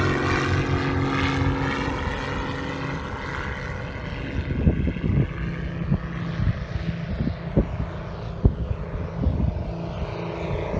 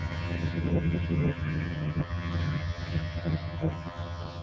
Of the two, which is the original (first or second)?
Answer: first